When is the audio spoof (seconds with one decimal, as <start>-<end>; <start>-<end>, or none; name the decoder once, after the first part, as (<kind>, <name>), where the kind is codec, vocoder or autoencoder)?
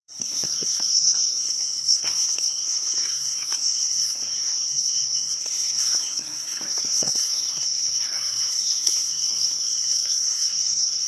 0.0-11.1 (codec, SNAC)